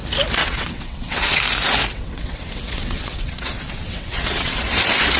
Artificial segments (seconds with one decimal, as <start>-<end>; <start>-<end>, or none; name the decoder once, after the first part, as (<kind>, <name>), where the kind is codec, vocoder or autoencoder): 0.4-1.4 (vocoder, WaveNeXt); 1.9-5.2